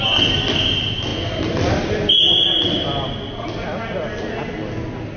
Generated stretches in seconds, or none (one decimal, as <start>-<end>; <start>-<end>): none